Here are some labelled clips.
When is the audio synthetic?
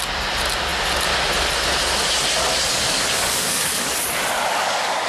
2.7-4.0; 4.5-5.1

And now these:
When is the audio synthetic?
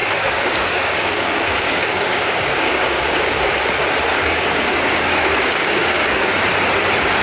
0.0-3.6; 4.1-6.3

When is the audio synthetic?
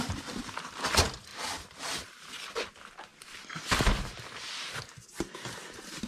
none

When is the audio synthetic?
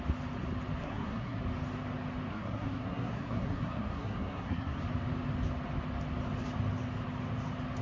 0.8-1.4; 2.3-4.8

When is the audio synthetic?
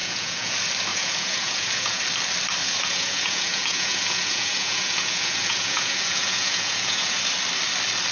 0.0-0.5; 0.9-2.0; 2.6-7.2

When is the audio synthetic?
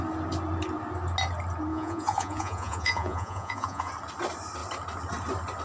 1.7-3.9